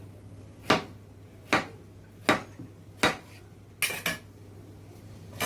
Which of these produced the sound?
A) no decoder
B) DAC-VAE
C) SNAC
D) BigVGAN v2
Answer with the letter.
A